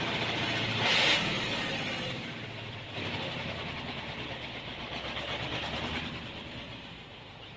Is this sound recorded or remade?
recorded